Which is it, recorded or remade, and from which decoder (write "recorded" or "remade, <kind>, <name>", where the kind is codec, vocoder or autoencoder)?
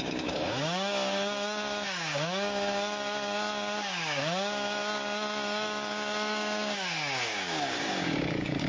remade, codec, DAC